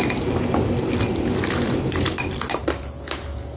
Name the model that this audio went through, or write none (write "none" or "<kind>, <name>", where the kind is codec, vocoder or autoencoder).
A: none